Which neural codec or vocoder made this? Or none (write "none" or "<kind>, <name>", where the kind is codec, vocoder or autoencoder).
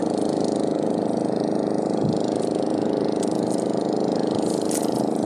none